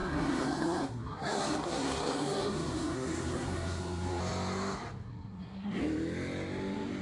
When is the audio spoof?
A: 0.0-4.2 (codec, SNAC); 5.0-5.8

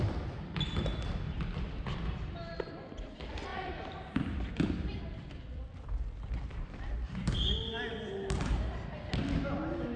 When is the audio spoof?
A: 0.9-2.2 (vocoder, BigVGAN v2); 3.5-7.5

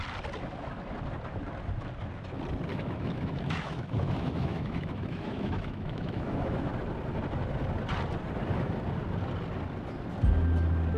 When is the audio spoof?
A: 2.7-6.7 (autoencoder, DAC-VAE)

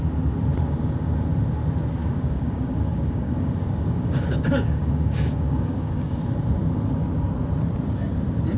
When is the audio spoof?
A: 2.0-6.2 (codec, DAC)

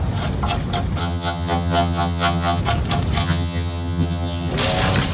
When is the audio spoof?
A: 1.0-2.6 (vocoder, HiFi-GAN); 3.2-4.5

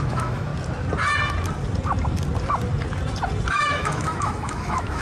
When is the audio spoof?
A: 0.0-0.5 (autoencoder, DAC-VAE); 3.5-5.0

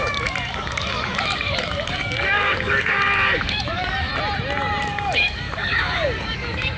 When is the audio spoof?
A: 0.0-4.1 (codec, DAC); 4.9-6.8

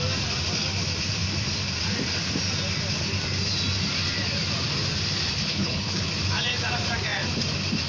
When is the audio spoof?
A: 5.5-6.1 (codec, HILCodec)